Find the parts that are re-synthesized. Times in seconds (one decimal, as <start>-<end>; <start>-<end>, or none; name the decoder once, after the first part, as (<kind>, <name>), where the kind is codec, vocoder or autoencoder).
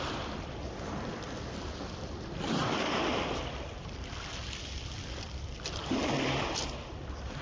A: 0.0-2.6 (vocoder, BigVGAN v2); 3.4-7.4